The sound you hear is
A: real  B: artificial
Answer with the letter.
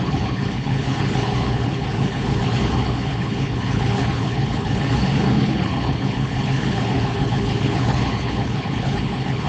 B